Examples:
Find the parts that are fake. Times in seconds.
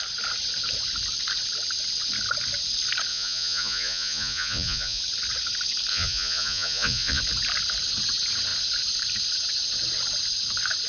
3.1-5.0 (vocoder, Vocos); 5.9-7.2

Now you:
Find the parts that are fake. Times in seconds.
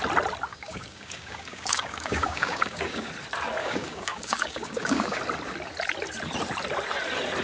0.5-3.1 (codec, DAC); 3.6-5.2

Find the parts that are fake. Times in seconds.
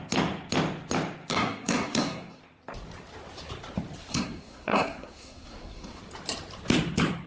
1.3-2.4 (codec, SNAC); 4.1-6.0